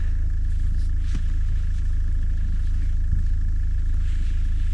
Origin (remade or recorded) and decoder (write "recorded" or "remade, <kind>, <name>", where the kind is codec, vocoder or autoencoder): recorded